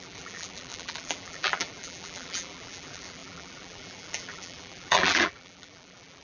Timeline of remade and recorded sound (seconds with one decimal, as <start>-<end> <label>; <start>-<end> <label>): 0.0-6.2 remade

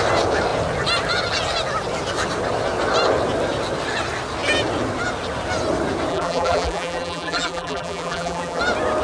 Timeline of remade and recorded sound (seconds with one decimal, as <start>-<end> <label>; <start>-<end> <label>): 0.0-6.1 recorded; 6.1-8.6 remade; 8.6-9.0 recorded

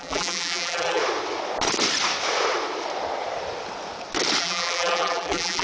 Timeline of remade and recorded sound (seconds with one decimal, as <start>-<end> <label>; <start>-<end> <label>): 0.0-1.0 remade; 1.0-4.4 recorded; 4.4-5.6 remade

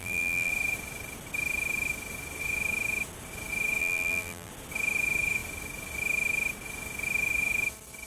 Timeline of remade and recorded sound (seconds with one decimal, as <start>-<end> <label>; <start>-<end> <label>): 0.0-0.5 remade; 0.5-3.8 recorded; 3.8-4.5 remade; 4.5-8.1 recorded

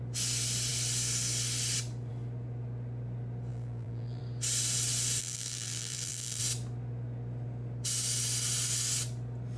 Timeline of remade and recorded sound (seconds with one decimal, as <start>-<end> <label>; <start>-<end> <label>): 0.0-3.5 recorded; 3.5-4.2 remade; 4.2-5.2 recorded; 5.2-6.4 remade; 6.4-9.6 recorded

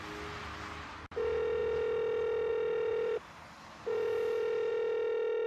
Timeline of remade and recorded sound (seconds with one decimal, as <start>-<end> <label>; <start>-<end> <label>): 0.0-2.9 recorded; 2.9-4.7 remade; 4.7-5.5 recorded